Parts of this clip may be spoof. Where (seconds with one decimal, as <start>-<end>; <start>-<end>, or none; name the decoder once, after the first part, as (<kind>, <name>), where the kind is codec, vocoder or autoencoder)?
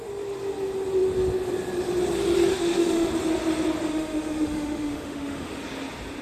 2.5-3.1 (autoencoder, DAC-VAE); 3.9-5.5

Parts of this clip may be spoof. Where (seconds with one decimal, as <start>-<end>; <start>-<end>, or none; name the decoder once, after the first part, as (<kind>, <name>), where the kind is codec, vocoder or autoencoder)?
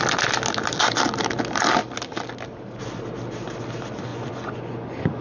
4.1-5.2 (vocoder, Vocos)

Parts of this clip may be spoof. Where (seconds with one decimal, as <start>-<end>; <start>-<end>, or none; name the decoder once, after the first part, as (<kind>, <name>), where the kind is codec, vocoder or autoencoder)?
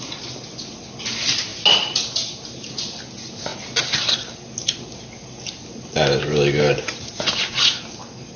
none